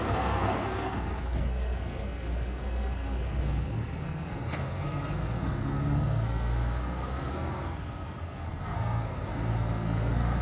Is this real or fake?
fake